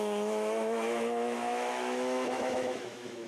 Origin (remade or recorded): remade